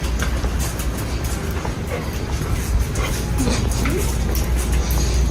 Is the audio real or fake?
real